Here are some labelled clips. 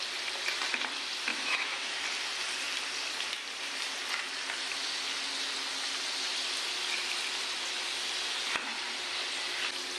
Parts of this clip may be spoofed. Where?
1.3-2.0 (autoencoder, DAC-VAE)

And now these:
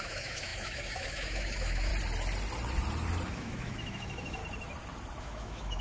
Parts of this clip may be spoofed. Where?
0.0-1.9 (autoencoder, DAC-VAE); 3.3-4.4; 5.2-5.8

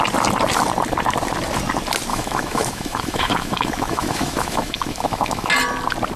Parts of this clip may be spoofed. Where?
2.1-5.5 (autoencoder, DAC-VAE)

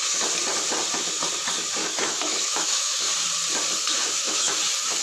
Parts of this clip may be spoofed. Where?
1.8-3.0 (autoencoder, DAC-VAE); 3.8-4.6

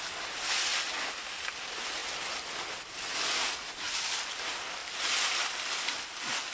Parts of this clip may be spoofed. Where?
none